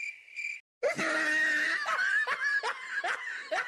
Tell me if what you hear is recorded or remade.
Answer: recorded